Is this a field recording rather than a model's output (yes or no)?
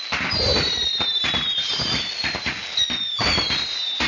yes